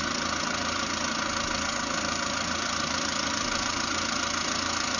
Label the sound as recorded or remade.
remade